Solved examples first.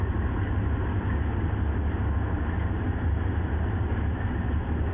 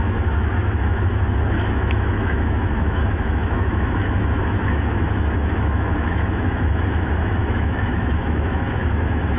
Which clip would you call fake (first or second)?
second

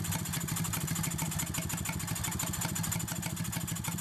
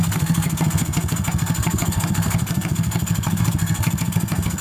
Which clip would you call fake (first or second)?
second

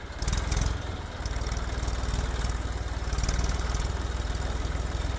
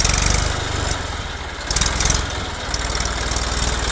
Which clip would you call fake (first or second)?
first